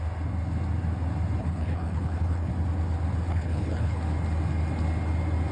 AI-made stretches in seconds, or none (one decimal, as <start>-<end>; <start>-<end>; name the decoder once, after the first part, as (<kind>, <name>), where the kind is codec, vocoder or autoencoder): 1.4-2.5 (codec, HILCodec); 3.3-4.0